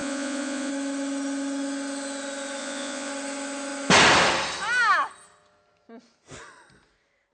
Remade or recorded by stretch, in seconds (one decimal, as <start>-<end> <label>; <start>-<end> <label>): 0.0-0.7 remade; 0.7-2.6 recorded; 2.6-3.1 remade; 3.1-7.3 recorded